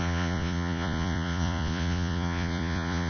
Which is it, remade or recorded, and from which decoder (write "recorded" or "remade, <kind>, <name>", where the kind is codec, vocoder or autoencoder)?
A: remade, vocoder, Vocos